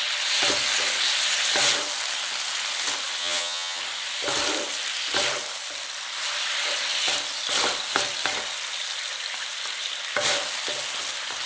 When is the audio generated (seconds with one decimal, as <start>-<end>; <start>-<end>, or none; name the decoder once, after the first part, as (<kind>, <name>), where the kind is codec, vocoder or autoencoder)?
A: 3.2-3.8 (vocoder, HiFi-GAN)